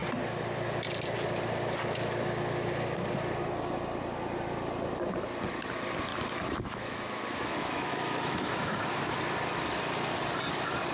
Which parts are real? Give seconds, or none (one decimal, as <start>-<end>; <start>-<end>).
0.0-6.1; 9.2-10.9